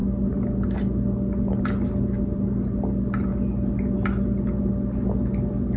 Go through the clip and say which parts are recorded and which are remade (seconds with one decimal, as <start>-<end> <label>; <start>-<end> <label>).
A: 0.0-5.8 recorded